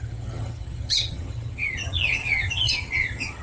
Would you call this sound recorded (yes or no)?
no